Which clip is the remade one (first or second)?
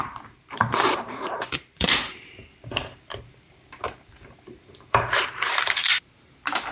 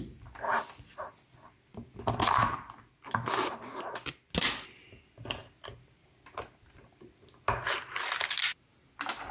first